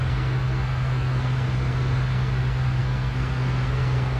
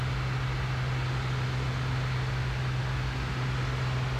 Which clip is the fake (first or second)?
first